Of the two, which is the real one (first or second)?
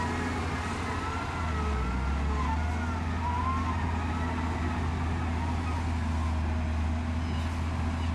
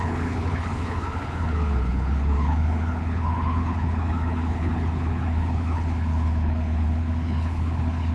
first